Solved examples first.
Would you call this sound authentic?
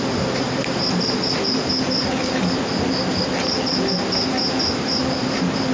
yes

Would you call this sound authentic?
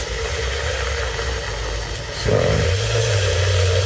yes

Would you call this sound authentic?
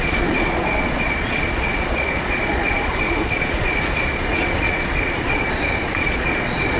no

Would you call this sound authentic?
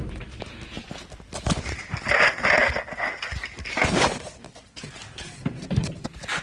yes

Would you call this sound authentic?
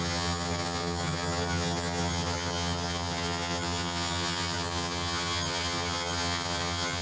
no